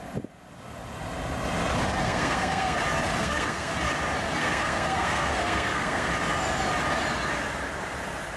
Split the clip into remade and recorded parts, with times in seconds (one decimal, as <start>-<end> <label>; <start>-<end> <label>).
0.0-2.0 recorded; 2.0-2.8 remade; 2.8-3.2 recorded; 3.2-3.7 remade; 3.7-4.4 recorded; 4.4-6.1 remade; 6.1-8.4 recorded